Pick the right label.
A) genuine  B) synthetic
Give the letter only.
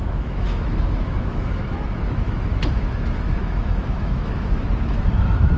B